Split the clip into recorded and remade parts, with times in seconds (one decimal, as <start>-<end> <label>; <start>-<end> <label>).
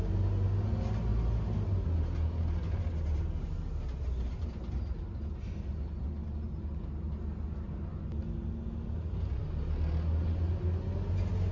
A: 0.0-11.5 recorded